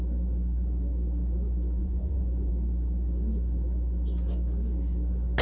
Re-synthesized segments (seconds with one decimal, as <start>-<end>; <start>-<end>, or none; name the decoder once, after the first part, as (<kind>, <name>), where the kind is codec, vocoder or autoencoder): 1.8-2.5 (vocoder, Vocos)